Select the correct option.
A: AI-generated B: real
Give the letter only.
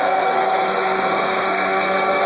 A